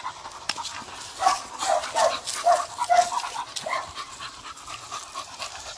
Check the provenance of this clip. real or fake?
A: real